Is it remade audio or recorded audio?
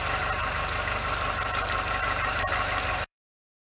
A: remade